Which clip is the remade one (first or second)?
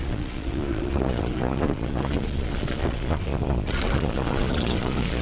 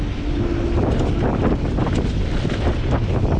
first